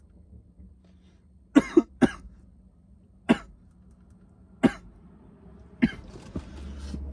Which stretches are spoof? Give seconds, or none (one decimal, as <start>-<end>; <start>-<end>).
none